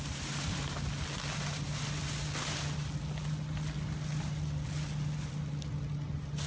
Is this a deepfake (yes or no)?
no